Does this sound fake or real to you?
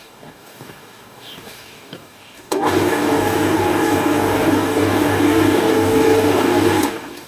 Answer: fake